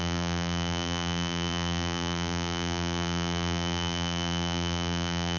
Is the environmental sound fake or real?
fake